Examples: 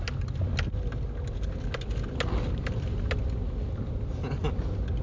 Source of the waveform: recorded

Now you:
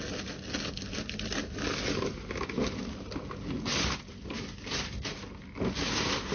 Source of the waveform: recorded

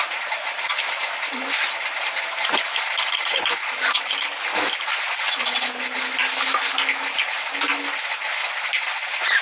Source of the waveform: recorded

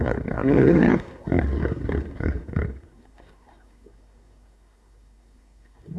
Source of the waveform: remade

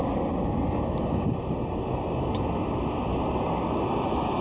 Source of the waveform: recorded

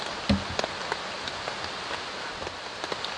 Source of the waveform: recorded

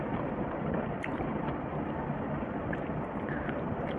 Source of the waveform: recorded